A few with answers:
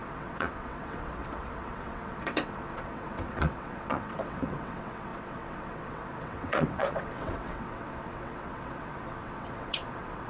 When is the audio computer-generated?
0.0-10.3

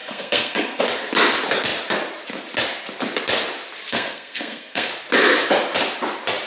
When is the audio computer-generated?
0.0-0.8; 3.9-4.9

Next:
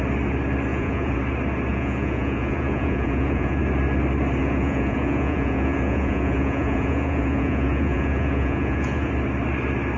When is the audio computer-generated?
0.7-1.2; 1.7-3.6; 4.4-9.1

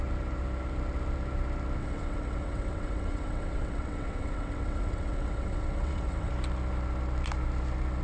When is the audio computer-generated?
1.8-6.3

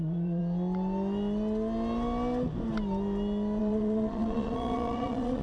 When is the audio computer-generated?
0.0-0.4; 3.6-5.4